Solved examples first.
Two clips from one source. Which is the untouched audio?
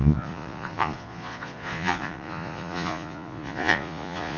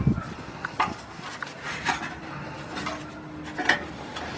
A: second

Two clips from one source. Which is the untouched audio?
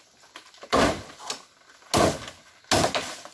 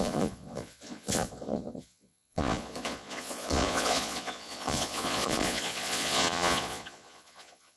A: first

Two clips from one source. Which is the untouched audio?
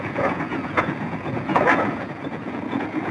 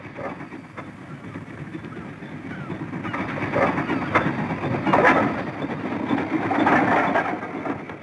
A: second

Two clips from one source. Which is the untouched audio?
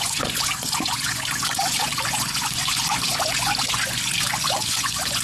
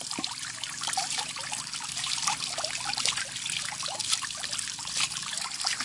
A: second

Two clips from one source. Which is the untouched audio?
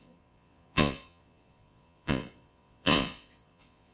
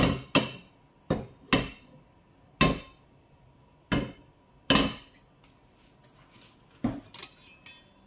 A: second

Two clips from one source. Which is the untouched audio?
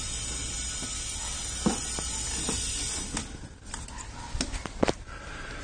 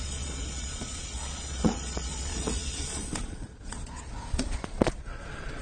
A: first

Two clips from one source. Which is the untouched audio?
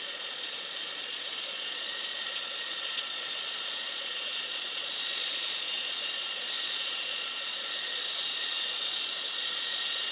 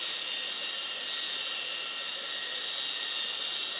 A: second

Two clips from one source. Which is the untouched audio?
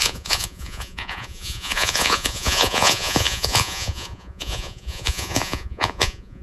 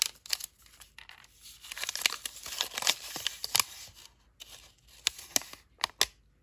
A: second